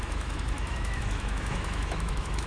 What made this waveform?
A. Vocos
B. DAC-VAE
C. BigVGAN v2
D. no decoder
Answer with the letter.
B